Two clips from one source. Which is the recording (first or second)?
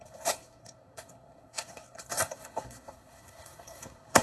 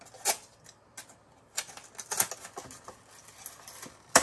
second